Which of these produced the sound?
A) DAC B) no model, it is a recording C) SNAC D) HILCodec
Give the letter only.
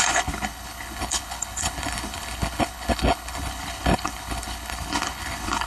D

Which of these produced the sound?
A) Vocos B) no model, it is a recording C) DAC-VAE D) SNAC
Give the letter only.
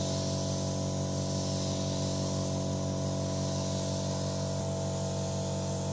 B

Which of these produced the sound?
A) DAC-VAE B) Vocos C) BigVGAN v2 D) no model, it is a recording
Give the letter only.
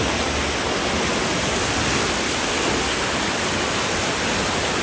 D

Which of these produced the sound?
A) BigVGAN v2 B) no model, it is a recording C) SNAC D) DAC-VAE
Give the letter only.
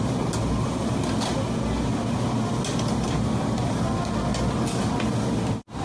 B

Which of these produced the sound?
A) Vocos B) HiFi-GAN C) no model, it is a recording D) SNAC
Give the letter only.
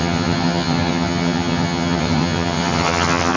B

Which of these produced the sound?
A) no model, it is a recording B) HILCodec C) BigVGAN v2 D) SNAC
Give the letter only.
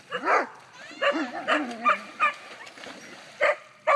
A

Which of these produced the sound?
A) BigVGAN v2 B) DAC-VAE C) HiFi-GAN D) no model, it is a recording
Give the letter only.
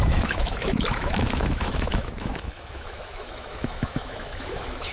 B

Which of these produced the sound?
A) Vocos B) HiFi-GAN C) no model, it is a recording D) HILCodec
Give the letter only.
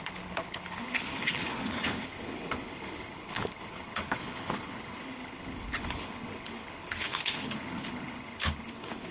D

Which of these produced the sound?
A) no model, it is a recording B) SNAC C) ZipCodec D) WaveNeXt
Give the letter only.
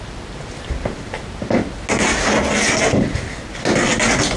A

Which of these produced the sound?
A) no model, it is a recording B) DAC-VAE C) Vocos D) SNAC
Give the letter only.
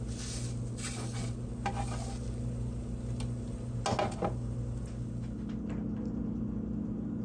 A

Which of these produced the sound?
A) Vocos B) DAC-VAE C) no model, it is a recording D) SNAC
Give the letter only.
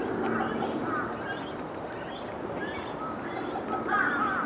C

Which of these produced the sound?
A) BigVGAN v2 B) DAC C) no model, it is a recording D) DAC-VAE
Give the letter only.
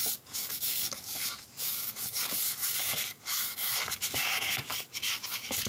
B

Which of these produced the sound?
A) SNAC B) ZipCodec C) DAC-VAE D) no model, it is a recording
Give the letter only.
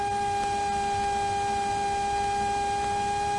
D